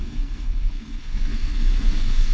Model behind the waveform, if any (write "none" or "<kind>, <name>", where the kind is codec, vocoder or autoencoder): codec, SNAC